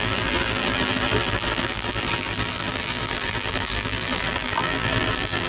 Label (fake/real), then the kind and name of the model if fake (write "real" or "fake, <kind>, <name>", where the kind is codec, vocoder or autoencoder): fake, vocoder, BigVGAN v2